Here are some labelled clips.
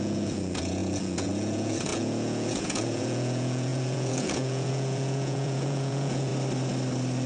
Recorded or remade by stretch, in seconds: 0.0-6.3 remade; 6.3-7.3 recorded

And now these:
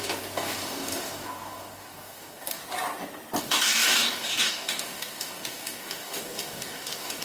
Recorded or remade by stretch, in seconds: 0.0-2.6 remade; 2.6-3.4 recorded; 3.4-7.2 remade

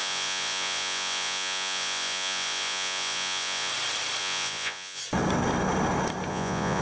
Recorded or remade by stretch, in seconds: 0.0-3.7 remade; 3.7-4.2 recorded; 4.2-5.0 remade; 5.0-6.3 recorded; 6.3-6.8 remade

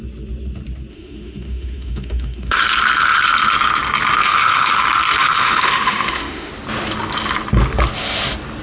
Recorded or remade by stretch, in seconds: 0.0-0.9 recorded; 0.9-2.6 remade; 2.6-4.2 recorded; 4.2-4.8 remade; 4.8-5.2 recorded; 5.2-6.5 remade; 6.5-8.6 recorded